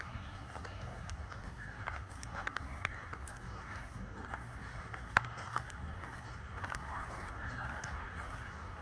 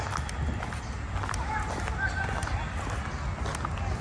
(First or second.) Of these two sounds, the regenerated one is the first